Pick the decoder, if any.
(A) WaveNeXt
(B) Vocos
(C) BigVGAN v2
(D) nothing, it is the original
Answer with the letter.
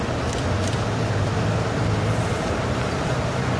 C